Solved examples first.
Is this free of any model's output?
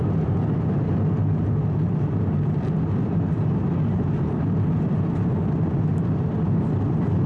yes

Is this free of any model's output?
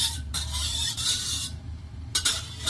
no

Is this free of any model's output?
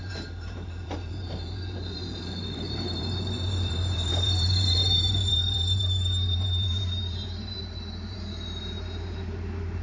no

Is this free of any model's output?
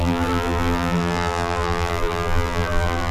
no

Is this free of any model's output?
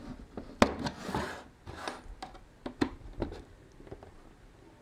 yes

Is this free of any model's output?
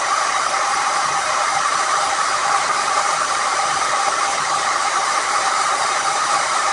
no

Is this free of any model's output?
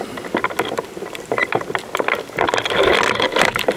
yes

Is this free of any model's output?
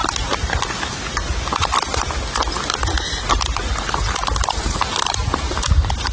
yes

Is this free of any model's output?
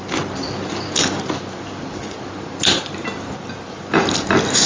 yes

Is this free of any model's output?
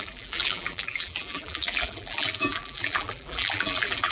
no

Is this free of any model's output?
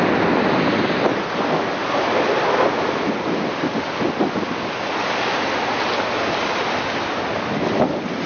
yes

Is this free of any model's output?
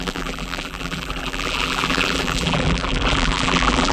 no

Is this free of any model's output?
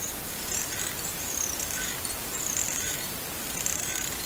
no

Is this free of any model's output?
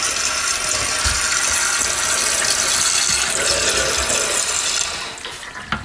yes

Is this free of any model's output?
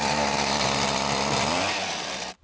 no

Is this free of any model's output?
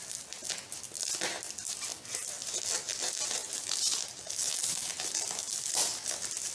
yes